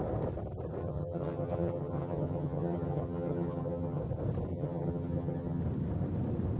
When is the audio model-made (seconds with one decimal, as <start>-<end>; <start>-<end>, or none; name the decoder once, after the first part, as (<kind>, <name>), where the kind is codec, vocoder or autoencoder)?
0.8-4.0 (vocoder, HiFi-GAN); 4.5-5.6